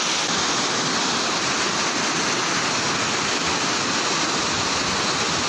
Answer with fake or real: real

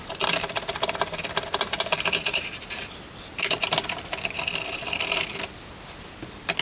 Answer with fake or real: real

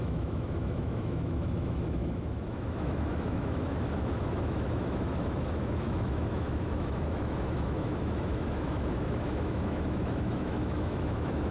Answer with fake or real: fake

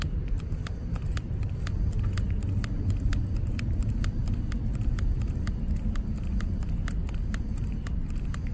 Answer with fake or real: real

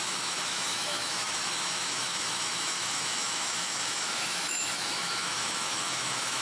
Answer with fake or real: fake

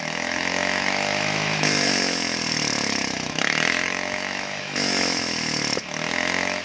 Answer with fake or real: fake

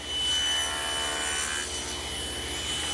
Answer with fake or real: real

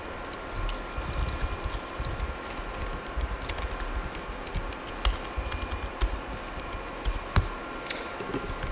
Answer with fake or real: real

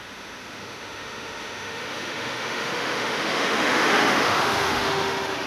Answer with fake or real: fake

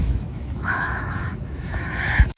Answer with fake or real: fake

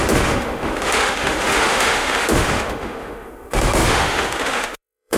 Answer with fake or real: fake